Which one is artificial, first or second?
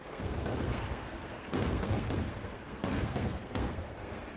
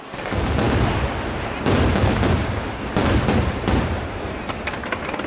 first